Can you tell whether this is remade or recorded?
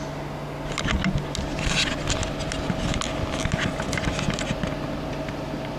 recorded